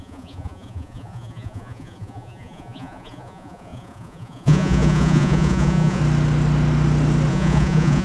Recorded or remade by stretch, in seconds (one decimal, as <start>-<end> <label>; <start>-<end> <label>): 0.0-6.0 remade; 6.0-7.3 recorded; 7.3-8.0 remade